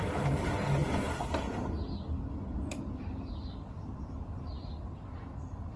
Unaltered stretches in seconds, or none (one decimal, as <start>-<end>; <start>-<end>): 0.0-5.8